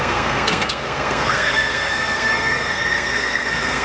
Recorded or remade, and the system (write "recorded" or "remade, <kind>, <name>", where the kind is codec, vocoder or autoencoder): remade, codec, SNAC